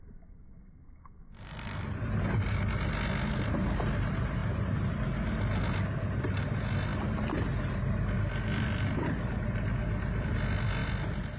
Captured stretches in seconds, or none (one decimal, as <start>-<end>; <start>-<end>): 0.0-11.4